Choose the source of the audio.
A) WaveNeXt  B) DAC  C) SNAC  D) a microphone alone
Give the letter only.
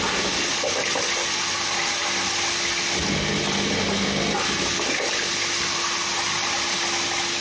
D